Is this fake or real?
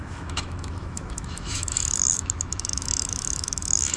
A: fake